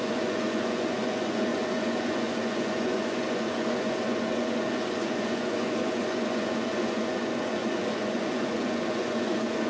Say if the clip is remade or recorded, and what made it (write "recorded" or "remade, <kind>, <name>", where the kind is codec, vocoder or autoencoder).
remade, vocoder, Vocos